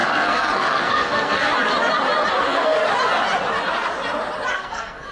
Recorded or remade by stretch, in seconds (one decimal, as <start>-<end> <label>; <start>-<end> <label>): 0.0-1.5 remade; 1.5-2.4 recorded; 2.4-2.8 remade; 2.8-4.5 recorded; 4.5-5.1 remade

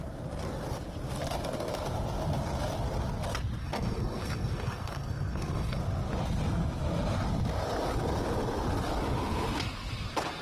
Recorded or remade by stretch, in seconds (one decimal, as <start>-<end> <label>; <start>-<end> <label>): 0.0-3.6 recorded; 3.6-5.8 remade; 5.8-10.4 recorded

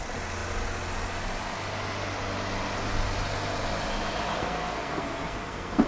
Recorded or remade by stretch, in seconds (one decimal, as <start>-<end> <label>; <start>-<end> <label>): 0.0-4.3 recorded; 4.3-5.9 remade

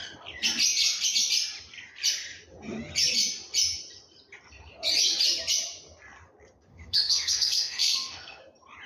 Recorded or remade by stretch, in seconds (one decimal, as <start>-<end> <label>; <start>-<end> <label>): 0.0-6.7 recorded; 6.7-8.4 remade; 8.4-8.9 recorded

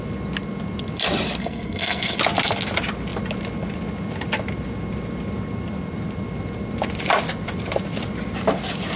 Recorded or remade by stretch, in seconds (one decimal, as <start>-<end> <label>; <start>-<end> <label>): 0.0-1.4 recorded; 1.4-2.2 remade; 2.2-9.0 recorded

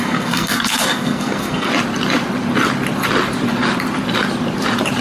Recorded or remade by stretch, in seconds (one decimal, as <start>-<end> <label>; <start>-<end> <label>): 0.0-1.7 remade; 1.7-5.0 recorded

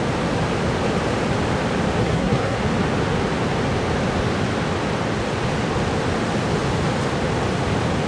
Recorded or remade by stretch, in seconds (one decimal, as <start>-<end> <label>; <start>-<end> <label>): 0.0-2.0 recorded; 2.0-2.6 remade; 2.6-8.1 recorded

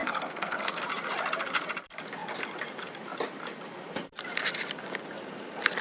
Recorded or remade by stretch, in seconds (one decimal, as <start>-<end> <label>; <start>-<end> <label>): 0.0-0.8 remade; 0.8-5.8 recorded